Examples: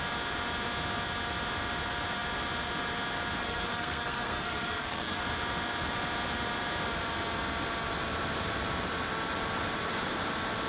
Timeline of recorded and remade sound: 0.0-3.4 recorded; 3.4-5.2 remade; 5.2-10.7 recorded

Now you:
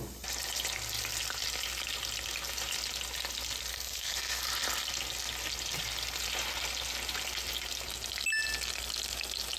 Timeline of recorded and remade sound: 0.0-3.7 recorded; 3.7-4.4 remade; 4.4-9.6 recorded

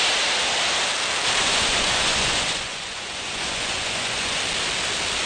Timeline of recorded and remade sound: 0.0-1.4 recorded; 1.4-4.4 remade; 4.4-5.3 recorded

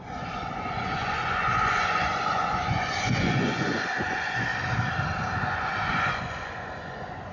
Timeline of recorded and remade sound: 0.0-4.5 remade; 4.5-5.4 recorded; 5.4-7.3 remade

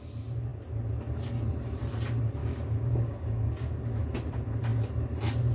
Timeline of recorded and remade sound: 0.0-2.4 recorded; 2.4-3.8 remade; 3.8-5.5 recorded

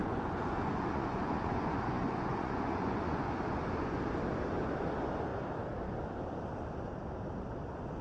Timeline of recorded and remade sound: 0.0-4.0 remade; 4.0-8.0 recorded

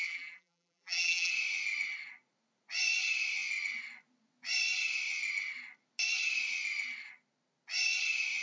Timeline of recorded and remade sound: 0.0-1.3 remade; 1.3-8.4 recorded